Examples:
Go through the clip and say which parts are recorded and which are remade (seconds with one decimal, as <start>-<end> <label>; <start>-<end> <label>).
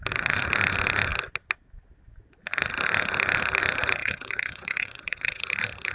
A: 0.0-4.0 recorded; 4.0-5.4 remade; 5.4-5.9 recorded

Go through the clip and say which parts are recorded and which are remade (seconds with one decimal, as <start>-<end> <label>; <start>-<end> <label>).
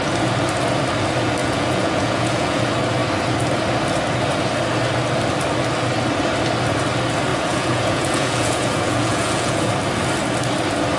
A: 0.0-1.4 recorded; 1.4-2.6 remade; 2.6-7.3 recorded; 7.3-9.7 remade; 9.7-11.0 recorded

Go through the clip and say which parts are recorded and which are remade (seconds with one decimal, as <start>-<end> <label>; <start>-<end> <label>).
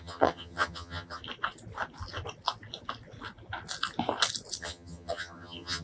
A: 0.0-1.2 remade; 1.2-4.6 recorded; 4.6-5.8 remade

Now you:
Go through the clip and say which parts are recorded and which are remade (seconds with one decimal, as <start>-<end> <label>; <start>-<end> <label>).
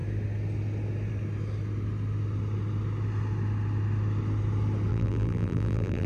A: 0.0-4.9 recorded; 4.9-6.1 remade